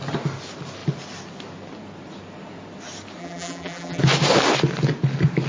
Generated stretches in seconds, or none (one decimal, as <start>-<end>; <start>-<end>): 3.2-4.0